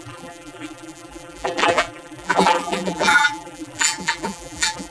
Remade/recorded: remade